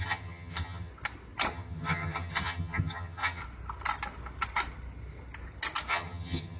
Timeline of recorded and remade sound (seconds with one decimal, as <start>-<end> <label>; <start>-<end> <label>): 0.0-0.9 remade; 0.9-1.5 recorded; 1.5-3.4 remade; 3.4-5.9 recorded; 5.9-6.6 remade